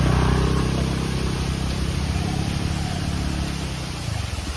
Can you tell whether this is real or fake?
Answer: real